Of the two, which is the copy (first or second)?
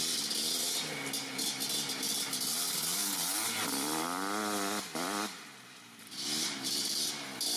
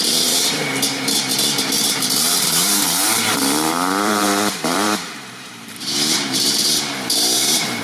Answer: second